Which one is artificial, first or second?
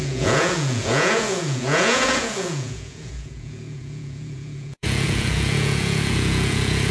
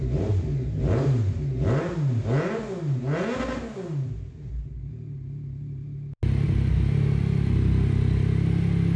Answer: first